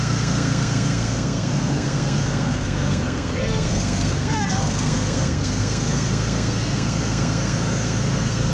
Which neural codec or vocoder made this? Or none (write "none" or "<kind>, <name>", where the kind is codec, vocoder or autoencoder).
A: codec, SNAC